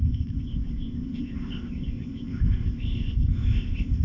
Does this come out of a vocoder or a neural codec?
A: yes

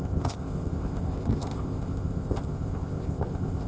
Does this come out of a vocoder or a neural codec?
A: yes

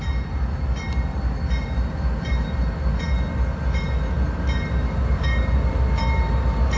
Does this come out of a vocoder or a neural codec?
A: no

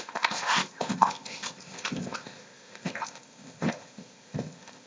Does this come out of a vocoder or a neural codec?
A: yes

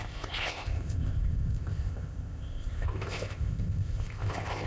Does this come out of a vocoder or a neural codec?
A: yes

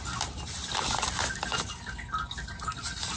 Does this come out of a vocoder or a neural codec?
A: no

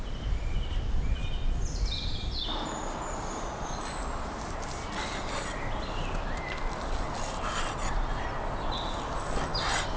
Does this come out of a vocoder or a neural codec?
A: no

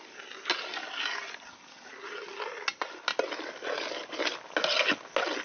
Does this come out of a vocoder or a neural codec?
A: no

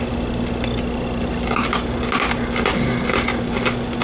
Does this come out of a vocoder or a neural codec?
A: no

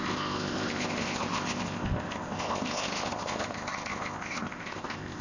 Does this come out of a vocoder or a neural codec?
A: yes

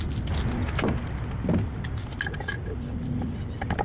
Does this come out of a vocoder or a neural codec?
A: no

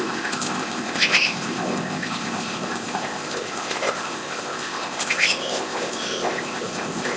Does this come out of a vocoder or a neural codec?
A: yes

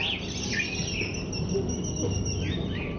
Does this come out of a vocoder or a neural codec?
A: no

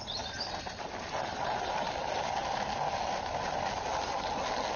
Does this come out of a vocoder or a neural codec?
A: no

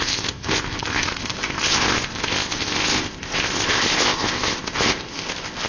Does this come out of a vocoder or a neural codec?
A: yes